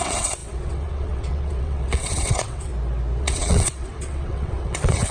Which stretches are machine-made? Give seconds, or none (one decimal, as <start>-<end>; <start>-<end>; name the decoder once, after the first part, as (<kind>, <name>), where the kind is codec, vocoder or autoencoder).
0.0-2.7 (vocoder, WaveNeXt); 3.2-5.1

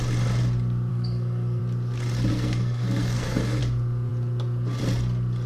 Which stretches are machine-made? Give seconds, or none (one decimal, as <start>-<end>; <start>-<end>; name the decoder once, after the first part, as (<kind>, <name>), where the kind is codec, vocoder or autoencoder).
0.9-1.6 (codec, SNAC); 2.3-3.6

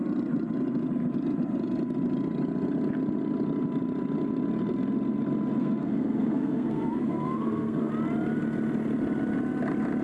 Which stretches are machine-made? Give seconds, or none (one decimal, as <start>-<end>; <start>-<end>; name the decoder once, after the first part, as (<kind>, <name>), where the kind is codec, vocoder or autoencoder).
5.6-7.9 (codec, SNAC)

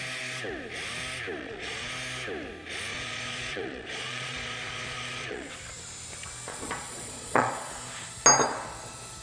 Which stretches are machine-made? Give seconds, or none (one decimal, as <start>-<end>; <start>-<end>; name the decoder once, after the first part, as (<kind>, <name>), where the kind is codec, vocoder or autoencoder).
1.4-1.9 (vocoder, Vocos); 2.9-5.5; 6.5-7.7

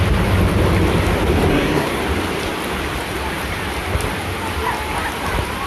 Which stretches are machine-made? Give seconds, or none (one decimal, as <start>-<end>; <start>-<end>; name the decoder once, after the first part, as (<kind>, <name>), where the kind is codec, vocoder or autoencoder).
1.5-2.0 (codec, SNAC)